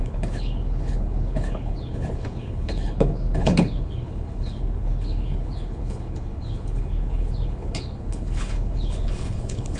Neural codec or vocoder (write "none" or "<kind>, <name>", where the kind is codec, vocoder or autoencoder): codec, HILCodec